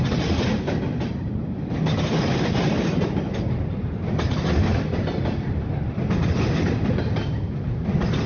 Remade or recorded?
recorded